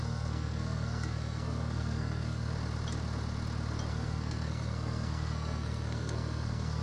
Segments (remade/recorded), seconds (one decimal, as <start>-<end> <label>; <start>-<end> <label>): 0.0-2.5 remade; 2.5-3.9 recorded; 3.9-6.8 remade